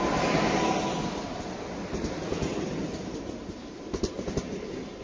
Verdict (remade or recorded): recorded